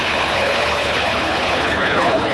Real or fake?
fake